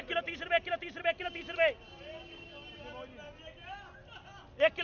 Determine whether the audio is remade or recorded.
recorded